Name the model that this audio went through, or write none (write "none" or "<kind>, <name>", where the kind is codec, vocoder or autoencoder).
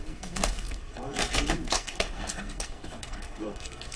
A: codec, SNAC